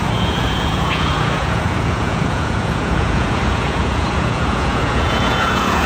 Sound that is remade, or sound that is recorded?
remade